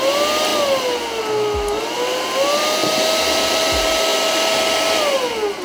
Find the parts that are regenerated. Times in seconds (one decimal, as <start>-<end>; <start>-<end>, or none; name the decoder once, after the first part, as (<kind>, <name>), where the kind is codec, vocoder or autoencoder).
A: none

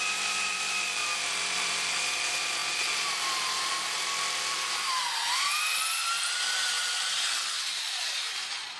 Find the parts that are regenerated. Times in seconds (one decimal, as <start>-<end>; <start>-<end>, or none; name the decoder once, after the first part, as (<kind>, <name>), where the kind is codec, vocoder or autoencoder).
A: 0.0-8.8 (vocoder, BigVGAN v2)

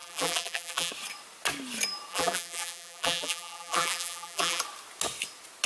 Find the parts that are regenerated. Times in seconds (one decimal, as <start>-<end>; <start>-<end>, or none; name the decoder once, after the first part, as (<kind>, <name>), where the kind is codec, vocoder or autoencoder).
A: 0.0-0.9 (vocoder, BigVGAN v2); 2.1-4.6

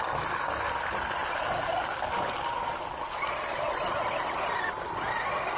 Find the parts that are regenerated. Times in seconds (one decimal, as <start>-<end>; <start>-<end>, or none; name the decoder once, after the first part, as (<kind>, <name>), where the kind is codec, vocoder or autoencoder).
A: none